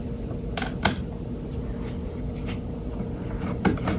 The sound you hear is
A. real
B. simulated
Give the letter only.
A